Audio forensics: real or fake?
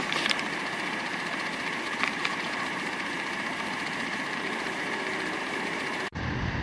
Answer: fake